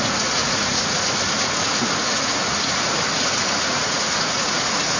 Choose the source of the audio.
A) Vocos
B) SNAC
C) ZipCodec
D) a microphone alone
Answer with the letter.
A